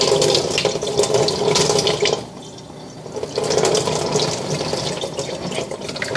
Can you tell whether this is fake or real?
real